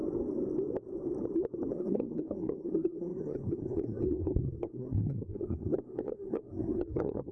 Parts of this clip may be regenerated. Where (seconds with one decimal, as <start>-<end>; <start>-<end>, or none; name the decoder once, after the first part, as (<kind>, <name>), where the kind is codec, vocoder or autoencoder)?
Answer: 1.7-7.3 (codec, SNAC)